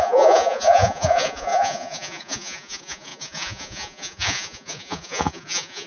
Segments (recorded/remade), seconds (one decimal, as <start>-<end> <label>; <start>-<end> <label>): 0.0-5.9 remade